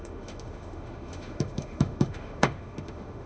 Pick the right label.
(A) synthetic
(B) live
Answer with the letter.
A